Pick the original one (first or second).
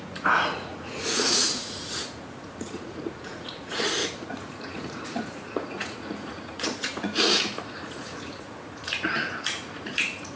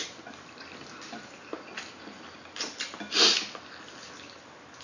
second